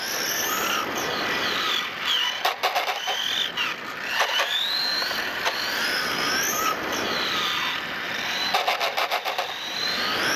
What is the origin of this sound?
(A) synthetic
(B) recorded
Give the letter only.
B